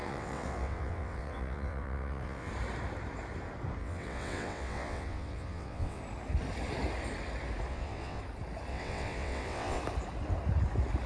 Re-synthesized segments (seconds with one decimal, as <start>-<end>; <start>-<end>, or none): 0.0-2.5; 3.8-6.0; 7.7-8.2; 8.7-9.8

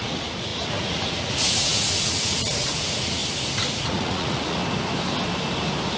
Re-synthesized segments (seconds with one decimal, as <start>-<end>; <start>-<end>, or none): 0.0-3.2; 3.7-4.6